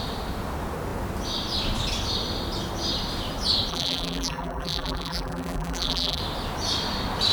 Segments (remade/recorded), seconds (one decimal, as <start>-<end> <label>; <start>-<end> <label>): 0.0-3.7 recorded; 3.7-6.2 remade; 6.2-7.3 recorded